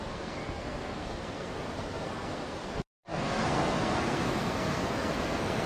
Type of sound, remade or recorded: remade